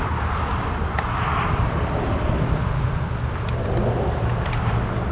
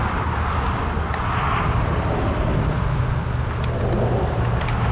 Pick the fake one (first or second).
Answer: first